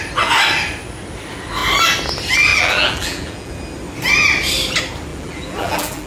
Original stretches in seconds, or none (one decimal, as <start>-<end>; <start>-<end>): 0.0-2.5; 3.5-5.1